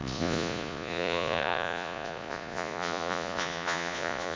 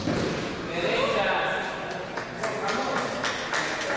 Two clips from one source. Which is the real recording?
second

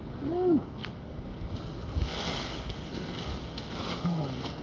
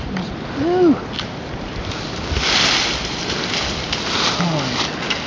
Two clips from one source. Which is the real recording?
second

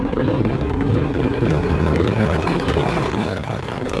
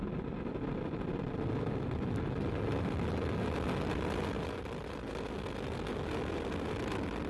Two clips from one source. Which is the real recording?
second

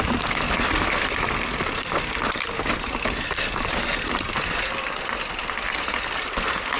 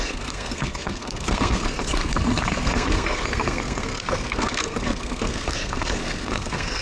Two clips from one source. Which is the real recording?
first